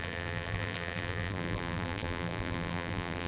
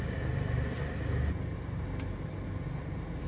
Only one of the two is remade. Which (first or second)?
first